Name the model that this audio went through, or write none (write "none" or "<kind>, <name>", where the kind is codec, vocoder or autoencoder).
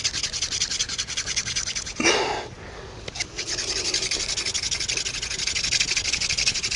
none